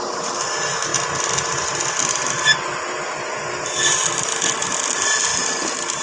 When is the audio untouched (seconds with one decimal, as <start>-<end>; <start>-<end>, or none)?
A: 0.0-6.0